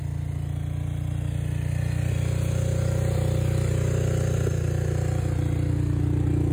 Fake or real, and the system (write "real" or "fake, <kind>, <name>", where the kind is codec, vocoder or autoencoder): real